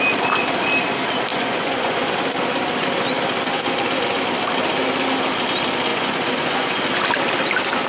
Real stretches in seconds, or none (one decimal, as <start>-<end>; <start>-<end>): 0.0-1.3; 2.1-5.9; 6.8-7.9